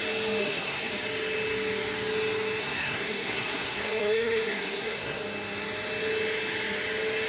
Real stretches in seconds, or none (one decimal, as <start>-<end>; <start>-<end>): 0.0-0.4; 0.9-2.6; 5.2-7.3